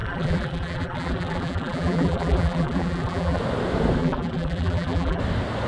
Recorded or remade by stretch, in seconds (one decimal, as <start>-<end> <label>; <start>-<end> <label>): 0.0-3.4 remade; 3.4-4.0 recorded; 4.0-5.2 remade; 5.2-5.7 recorded